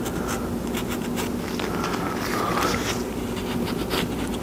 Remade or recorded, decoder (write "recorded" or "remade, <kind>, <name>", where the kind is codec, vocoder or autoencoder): recorded